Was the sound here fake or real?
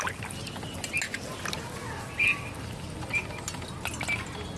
real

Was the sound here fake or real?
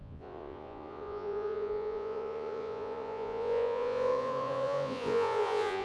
fake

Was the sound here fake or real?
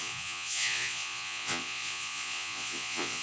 fake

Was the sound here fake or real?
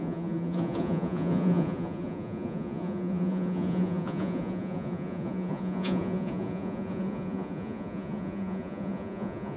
fake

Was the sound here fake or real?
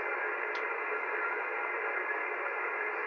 real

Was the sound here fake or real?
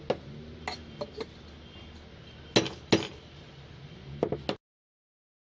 real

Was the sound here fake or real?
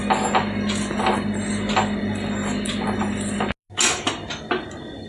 real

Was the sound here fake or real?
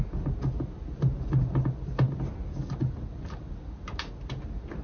real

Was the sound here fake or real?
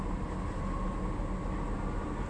real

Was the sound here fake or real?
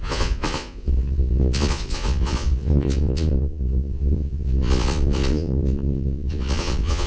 fake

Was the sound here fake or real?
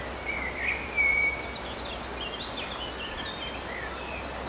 real